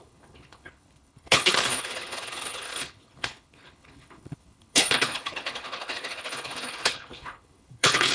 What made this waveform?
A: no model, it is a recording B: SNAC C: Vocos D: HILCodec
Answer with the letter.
D